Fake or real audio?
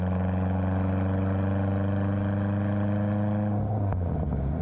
real